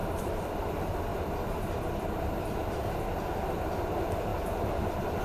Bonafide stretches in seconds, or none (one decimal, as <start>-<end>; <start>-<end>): 0.0-5.2